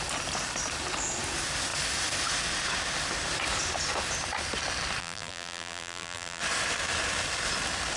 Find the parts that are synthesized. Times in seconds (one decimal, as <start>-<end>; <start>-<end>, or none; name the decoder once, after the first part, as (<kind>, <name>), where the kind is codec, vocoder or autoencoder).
5.0-6.4 (vocoder, BigVGAN v2)